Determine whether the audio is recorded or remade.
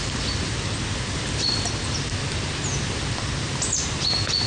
recorded